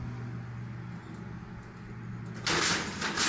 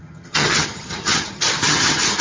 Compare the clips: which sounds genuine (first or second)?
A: first